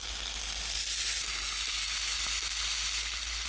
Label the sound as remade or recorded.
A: recorded